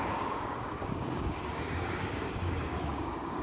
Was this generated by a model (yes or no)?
yes